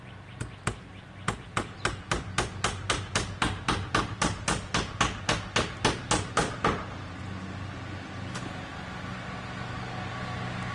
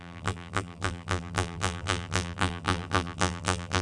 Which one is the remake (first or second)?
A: second